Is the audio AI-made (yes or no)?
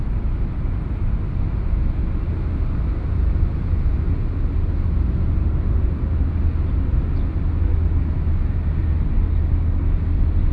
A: no